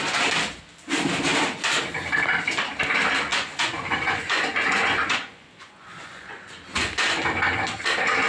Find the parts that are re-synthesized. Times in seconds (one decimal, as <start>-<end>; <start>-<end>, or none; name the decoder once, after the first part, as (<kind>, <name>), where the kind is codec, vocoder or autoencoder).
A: 3.3-7.2 (vocoder, Vocos)